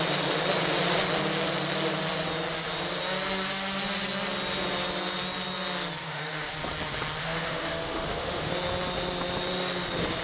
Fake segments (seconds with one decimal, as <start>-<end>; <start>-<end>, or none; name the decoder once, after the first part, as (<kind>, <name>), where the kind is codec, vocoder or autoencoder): 6.0-6.5 (autoencoder, DAC-VAE); 7.2-8.5